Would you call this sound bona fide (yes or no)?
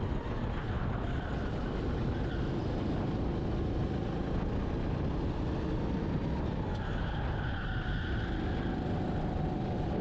yes